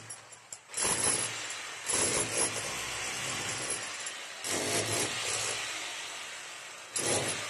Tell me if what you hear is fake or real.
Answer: real